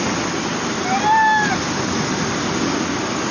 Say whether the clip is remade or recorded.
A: recorded